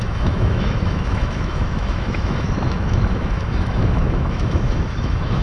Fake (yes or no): yes